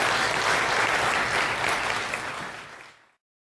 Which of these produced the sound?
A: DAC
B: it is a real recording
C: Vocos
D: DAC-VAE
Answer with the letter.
B